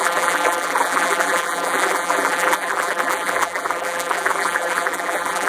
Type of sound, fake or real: fake